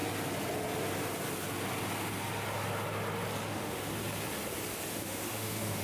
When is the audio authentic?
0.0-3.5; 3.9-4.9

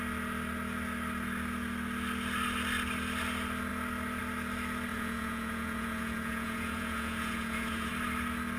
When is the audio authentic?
0.0-4.9; 7.9-8.6

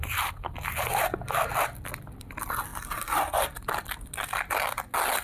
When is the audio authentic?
0.0-5.2

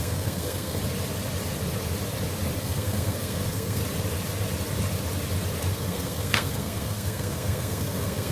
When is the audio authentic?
0.8-2.6; 3.8-5.7

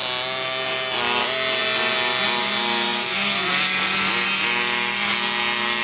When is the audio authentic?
0.0-2.9; 3.5-5.8

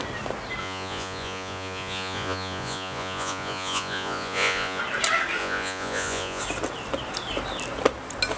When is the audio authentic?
0.0-0.6; 4.8-5.4; 6.4-8.4

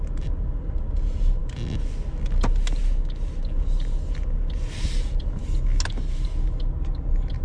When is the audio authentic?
0.0-7.4

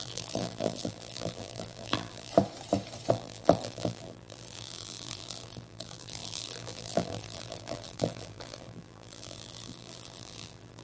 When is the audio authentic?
2.3-3.1